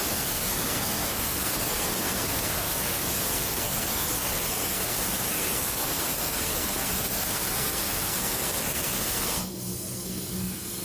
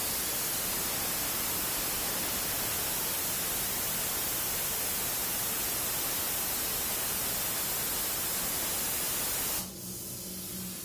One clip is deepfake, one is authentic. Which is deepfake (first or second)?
first